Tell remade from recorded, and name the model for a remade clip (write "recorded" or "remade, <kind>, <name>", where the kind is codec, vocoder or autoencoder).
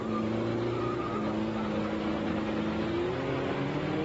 recorded